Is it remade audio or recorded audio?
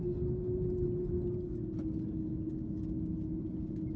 recorded